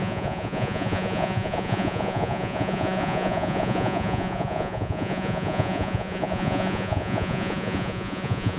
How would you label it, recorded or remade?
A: remade